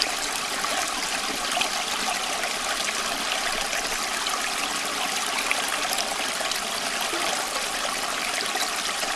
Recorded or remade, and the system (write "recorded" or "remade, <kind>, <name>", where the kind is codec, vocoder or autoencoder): recorded